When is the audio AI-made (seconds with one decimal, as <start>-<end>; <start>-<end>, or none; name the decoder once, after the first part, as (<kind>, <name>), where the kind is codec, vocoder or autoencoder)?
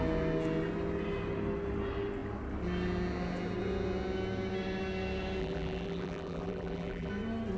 5.4-7.1 (vocoder, BigVGAN v2)